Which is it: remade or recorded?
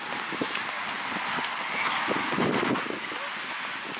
recorded